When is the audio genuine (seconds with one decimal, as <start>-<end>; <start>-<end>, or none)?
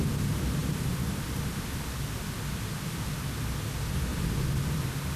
0.0-0.6; 2.3-4.1